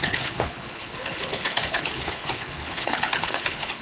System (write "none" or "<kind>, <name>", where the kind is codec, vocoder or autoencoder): codec, HILCodec